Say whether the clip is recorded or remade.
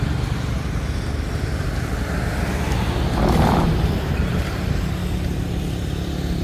recorded